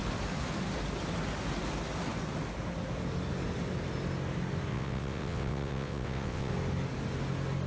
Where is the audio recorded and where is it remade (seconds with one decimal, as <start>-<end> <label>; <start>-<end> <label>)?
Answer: 0.0-4.7 recorded; 4.7-6.5 remade; 6.5-7.7 recorded